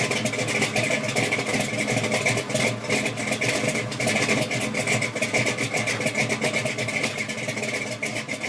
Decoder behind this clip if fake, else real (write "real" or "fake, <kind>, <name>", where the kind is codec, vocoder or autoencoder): real